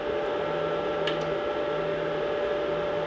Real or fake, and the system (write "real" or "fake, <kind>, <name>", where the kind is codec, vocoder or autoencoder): real